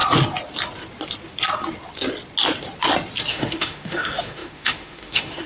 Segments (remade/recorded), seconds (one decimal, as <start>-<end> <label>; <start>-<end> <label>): 0.0-3.3 recorded; 3.3-5.5 remade